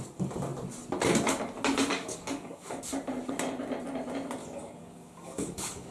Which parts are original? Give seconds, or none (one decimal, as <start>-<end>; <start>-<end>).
0.0-1.9; 2.8-4.4